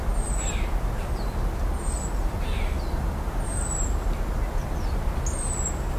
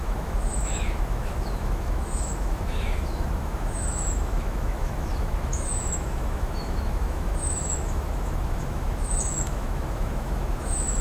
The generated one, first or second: second